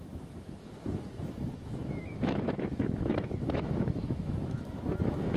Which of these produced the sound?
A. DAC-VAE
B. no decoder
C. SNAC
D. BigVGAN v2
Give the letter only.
A